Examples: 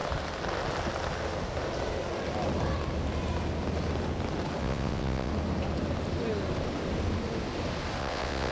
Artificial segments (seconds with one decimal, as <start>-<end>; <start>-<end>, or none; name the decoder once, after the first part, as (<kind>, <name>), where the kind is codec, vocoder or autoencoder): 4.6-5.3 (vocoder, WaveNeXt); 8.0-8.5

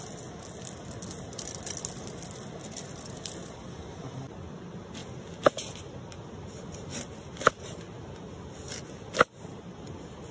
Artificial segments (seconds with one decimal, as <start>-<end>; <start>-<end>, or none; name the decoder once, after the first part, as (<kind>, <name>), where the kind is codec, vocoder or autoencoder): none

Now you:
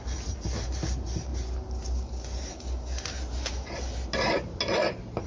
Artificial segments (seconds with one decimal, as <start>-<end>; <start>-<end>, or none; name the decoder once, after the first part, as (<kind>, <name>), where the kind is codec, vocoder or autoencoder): none

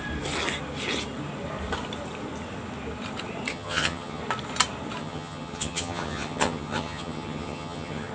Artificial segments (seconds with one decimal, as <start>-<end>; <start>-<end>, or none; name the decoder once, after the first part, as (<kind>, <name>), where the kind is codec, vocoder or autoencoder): 3.5-4.2 (vocoder, HiFi-GAN); 5.0-8.1